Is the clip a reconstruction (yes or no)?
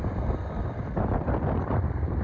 no